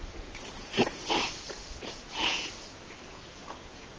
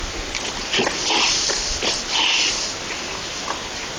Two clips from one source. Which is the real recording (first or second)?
second